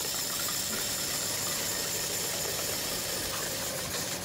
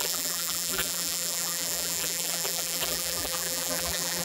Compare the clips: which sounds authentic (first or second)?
first